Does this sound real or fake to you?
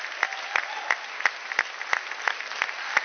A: real